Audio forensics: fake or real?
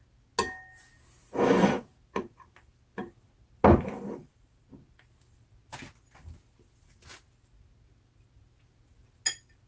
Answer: real